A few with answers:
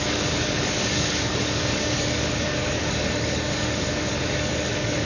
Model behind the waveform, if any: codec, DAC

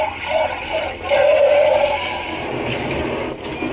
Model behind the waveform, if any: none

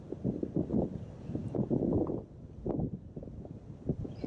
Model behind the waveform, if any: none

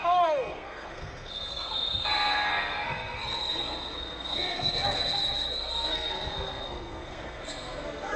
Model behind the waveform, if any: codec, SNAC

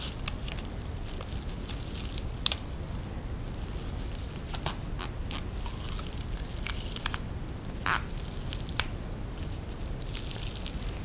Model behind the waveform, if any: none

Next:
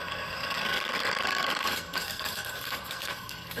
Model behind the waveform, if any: codec, SNAC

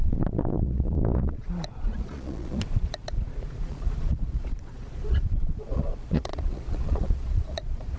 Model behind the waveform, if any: vocoder, Vocos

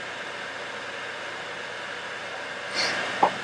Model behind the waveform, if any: none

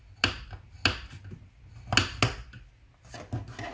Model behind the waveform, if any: none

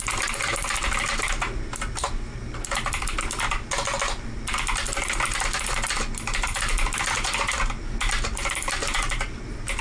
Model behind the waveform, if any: none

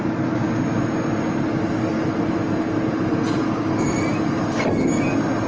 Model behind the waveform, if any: none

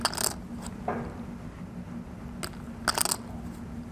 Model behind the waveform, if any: none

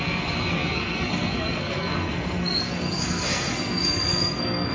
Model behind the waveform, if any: codec, SNAC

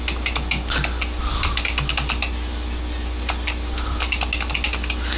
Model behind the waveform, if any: none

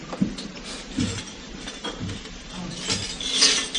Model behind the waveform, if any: none